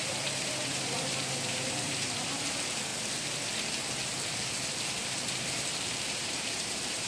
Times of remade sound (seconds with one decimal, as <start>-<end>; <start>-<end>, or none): 0.0-2.9; 4.7-7.1